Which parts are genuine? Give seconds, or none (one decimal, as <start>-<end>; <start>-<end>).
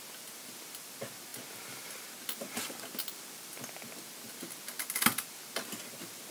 0.0-6.3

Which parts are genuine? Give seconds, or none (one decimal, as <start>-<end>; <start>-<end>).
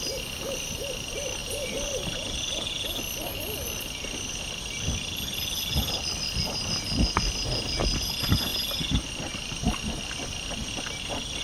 0.0-11.4